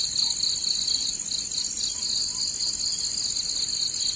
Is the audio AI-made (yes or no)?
no